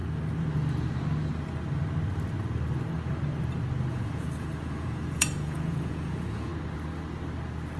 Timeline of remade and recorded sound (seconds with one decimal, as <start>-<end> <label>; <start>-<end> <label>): 0.0-3.9 recorded; 3.9-6.5 remade; 6.5-7.8 recorded